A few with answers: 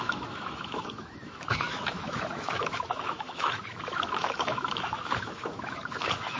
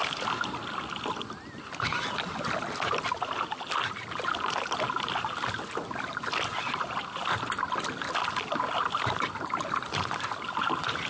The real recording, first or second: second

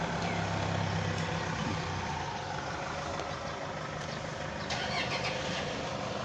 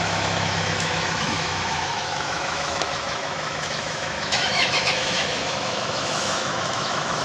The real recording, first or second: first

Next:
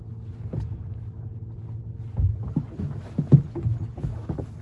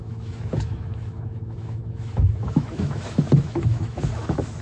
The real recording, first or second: first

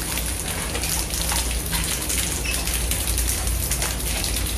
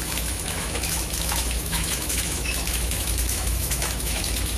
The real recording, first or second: first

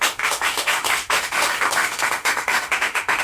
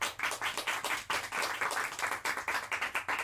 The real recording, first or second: second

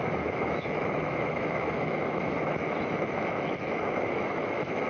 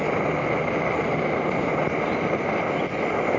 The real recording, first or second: second